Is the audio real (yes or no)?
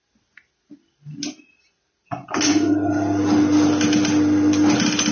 yes